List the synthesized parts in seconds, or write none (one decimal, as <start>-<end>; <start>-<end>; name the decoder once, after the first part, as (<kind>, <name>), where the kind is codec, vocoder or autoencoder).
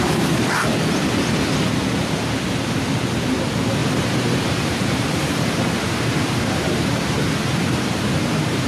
3.8-8.7 (vocoder, BigVGAN v2)